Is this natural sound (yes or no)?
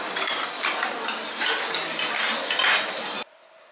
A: yes